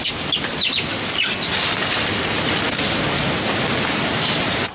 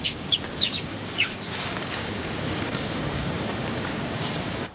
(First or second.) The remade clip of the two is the second